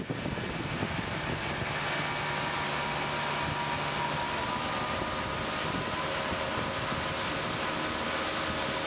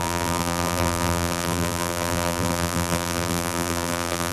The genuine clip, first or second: first